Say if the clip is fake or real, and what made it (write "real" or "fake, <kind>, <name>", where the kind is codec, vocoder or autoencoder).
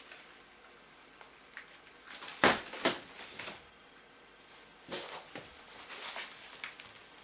real